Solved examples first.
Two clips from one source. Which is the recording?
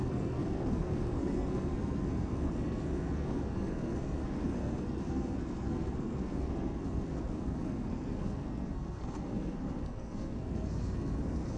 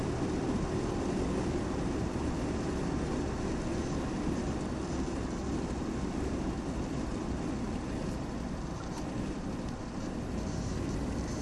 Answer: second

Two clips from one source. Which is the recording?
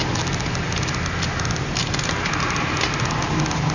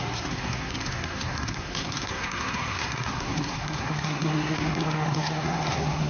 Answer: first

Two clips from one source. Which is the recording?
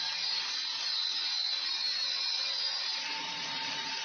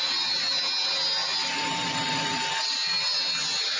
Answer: second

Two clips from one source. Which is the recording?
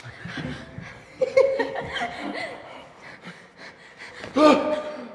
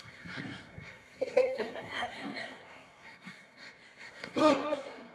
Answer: first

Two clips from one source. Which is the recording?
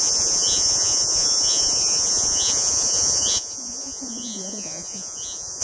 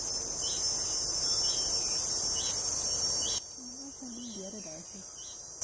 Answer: second